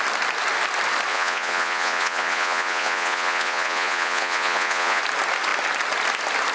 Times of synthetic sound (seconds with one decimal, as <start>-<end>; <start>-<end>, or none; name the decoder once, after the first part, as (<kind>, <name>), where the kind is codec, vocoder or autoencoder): 1.1-5.0 (vocoder, Vocos)